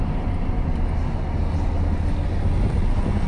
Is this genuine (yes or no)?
yes